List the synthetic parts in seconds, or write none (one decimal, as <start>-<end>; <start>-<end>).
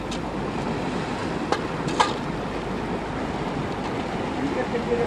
none